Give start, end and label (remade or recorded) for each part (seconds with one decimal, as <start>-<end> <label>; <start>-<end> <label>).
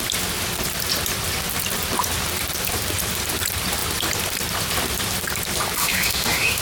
0.0-5.8 recorded; 5.8-6.6 remade